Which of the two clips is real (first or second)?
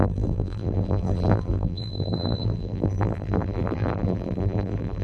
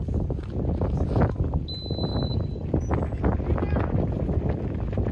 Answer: second